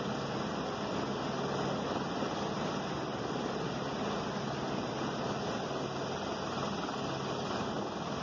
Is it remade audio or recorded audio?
recorded